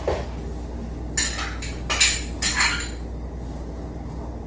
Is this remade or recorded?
recorded